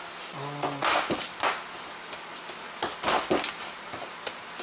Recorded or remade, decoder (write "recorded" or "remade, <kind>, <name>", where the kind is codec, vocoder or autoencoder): recorded